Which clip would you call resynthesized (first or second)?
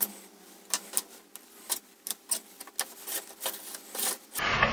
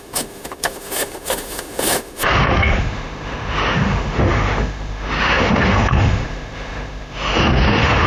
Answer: second